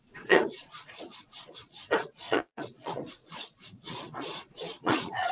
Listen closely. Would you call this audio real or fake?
fake